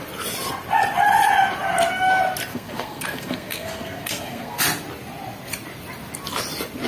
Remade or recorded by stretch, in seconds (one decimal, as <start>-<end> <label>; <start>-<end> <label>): 0.0-2.5 recorded; 2.5-4.6 remade; 4.6-6.9 recorded